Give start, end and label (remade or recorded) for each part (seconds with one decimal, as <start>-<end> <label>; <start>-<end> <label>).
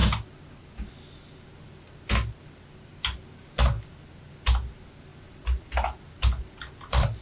0.0-7.2 recorded